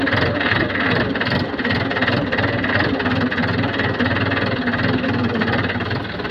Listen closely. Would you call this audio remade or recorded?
recorded